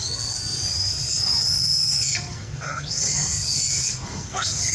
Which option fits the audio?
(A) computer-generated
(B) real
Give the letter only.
A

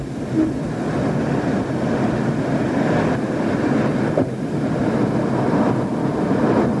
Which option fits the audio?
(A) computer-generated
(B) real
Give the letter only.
B